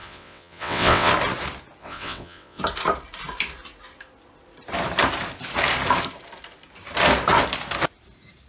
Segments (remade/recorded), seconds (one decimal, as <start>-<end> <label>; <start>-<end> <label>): 0.0-1.1 remade; 1.1-1.8 recorded; 1.8-2.6 remade; 2.6-8.5 recorded